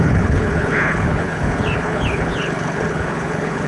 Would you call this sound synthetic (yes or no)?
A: yes